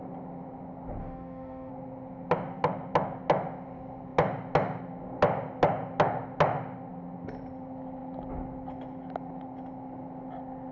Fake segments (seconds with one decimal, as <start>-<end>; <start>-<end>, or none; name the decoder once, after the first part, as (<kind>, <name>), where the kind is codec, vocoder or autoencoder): 1.0-1.7 (autoencoder, DAC-VAE)